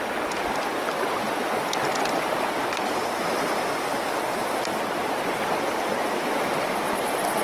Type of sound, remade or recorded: recorded